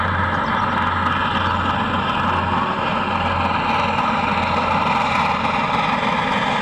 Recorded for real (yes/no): yes